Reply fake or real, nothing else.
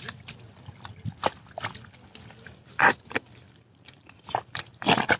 real